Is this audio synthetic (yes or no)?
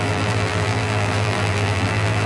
yes